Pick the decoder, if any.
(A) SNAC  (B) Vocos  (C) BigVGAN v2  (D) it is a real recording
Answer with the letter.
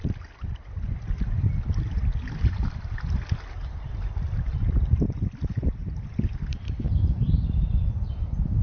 D